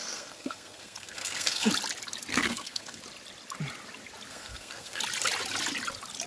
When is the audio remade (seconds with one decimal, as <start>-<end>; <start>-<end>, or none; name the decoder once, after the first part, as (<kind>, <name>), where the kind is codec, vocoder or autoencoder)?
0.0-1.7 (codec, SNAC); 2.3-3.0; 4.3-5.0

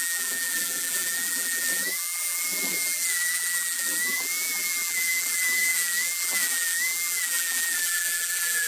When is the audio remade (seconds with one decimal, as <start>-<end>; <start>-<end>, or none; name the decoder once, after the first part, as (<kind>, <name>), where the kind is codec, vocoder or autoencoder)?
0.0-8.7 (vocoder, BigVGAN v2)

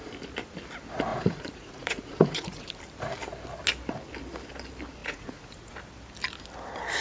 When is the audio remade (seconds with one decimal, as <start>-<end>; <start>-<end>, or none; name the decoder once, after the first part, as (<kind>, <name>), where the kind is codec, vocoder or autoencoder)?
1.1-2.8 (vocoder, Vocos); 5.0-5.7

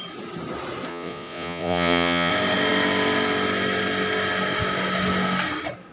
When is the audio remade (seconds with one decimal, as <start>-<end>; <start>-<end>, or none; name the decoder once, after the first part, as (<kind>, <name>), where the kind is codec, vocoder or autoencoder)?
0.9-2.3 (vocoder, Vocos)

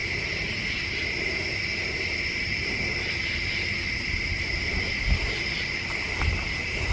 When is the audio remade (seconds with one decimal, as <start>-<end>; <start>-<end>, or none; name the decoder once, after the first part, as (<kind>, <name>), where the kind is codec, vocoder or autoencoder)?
0.0-0.8 (vocoder, BigVGAN v2)

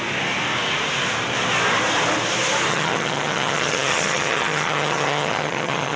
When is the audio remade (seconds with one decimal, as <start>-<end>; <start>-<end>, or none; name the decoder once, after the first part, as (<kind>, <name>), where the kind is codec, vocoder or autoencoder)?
2.7-6.0 (vocoder, HiFi-GAN)